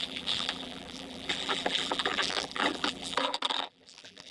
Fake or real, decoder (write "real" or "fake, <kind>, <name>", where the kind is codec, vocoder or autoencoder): fake, vocoder, BigVGAN v2